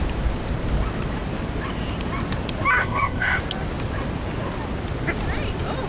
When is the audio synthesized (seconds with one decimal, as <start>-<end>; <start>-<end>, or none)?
2.8-3.4